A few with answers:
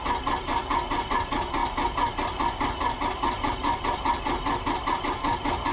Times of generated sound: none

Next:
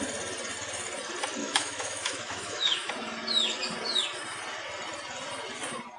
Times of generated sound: 1.4-2.9 (autoencoder, DAC-VAE)